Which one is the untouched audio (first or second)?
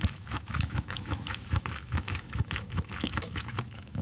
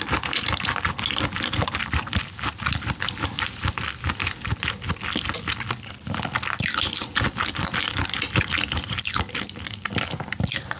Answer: second